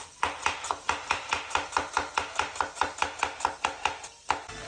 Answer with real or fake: real